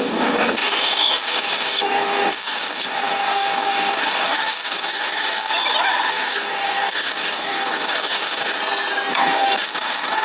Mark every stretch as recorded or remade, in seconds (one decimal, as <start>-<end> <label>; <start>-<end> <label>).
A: 0.0-5.5 remade; 5.5-6.1 recorded; 6.1-8.6 remade; 8.6-9.1 recorded; 9.1-10.2 remade